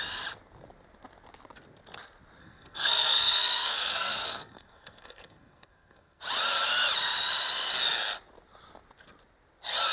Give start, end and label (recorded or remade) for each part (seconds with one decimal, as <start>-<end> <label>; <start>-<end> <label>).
0.0-2.4 recorded; 2.4-6.2 remade; 6.2-9.9 recorded